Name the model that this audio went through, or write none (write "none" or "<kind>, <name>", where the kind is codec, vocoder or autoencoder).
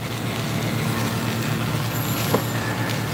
none